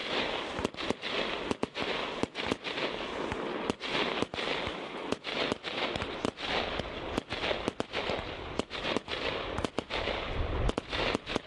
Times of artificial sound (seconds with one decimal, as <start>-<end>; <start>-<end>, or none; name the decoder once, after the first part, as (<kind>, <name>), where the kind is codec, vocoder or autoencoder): none